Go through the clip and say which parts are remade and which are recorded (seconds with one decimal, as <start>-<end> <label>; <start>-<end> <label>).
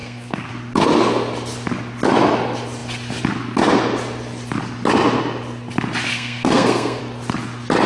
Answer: 0.0-0.5 remade; 0.5-6.1 recorded; 6.1-7.0 remade; 7.0-7.9 recorded